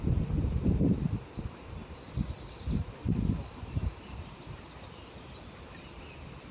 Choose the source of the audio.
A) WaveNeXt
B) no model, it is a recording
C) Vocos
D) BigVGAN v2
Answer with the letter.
B